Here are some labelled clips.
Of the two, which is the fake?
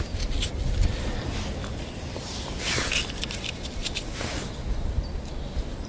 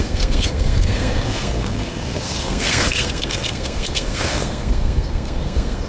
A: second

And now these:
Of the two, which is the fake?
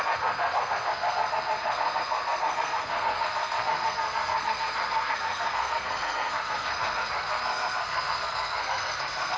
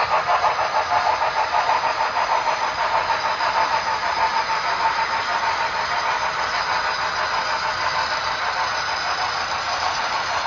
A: first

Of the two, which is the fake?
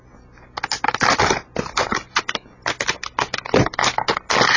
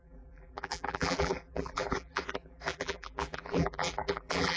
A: second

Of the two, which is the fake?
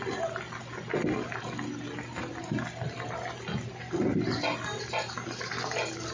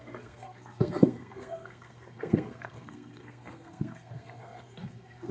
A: second